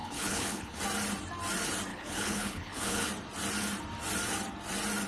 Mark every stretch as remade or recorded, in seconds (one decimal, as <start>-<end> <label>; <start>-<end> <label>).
0.0-0.8 remade; 0.8-1.9 recorded; 1.9-3.1 remade; 3.1-5.1 recorded